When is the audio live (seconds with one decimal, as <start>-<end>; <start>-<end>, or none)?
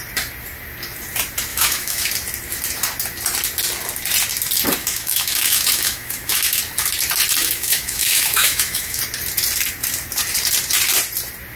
0.0-1.5; 2.1-4.8; 6.6-7.4; 9.0-11.6